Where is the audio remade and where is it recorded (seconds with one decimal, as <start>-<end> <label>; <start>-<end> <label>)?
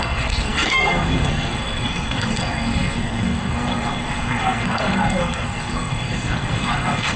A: 0.0-7.2 remade